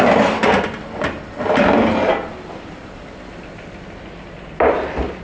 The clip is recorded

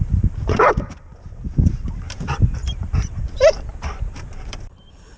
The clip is remade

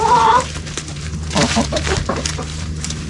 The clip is remade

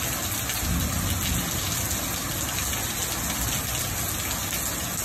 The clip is recorded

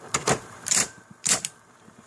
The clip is remade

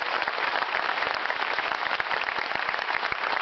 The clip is remade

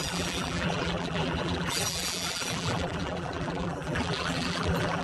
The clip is remade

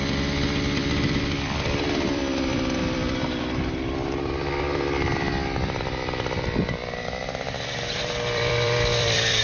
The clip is remade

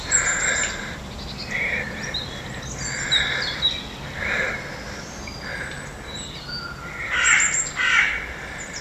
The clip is recorded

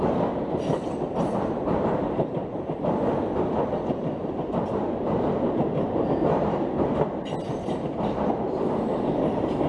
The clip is recorded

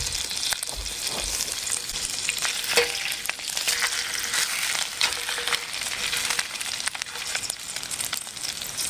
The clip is recorded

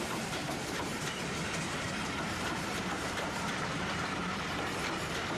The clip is remade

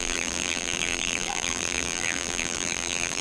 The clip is remade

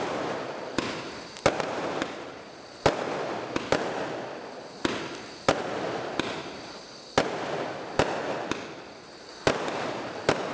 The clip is recorded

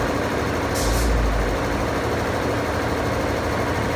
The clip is recorded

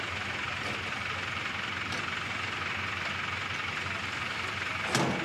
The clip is recorded